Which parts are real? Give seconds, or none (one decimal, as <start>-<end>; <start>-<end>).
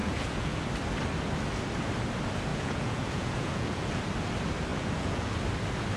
0.6-2.5; 4.0-4.7; 5.3-6.0